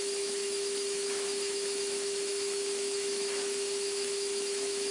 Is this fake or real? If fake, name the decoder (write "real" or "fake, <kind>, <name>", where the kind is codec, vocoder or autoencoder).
fake, autoencoder, DAC-VAE